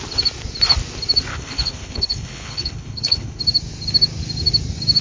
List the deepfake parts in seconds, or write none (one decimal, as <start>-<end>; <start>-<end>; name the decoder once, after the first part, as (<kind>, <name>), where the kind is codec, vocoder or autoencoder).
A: 1.3-3.4 (codec, HILCodec)